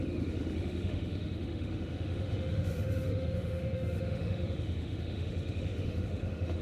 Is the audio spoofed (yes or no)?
yes